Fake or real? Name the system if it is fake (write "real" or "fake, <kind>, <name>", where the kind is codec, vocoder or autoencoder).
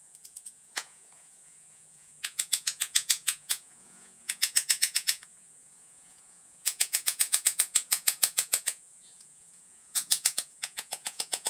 fake, vocoder, Vocos